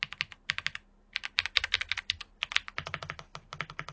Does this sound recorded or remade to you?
recorded